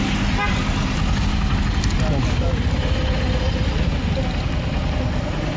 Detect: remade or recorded recorded